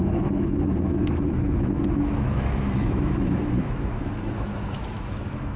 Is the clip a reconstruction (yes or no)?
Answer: yes